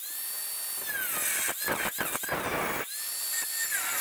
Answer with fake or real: real